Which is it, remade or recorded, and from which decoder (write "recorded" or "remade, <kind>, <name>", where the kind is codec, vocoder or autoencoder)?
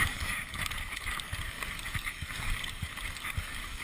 remade, codec, DAC